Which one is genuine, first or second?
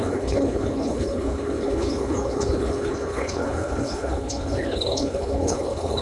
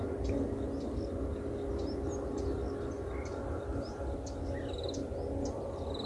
second